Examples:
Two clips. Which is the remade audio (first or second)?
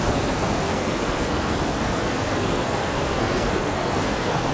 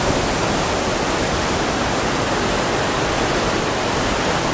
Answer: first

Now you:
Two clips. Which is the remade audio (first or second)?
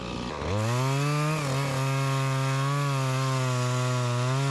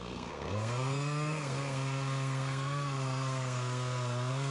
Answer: second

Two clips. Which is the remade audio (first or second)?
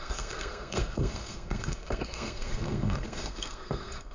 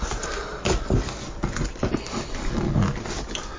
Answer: first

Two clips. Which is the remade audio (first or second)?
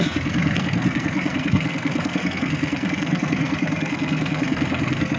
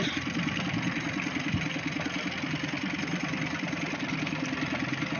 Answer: first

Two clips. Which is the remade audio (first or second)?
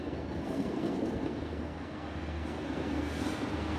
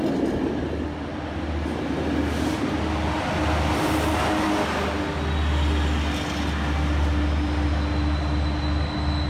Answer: first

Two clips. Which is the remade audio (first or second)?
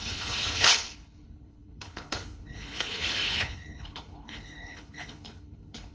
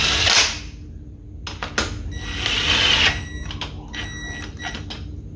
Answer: first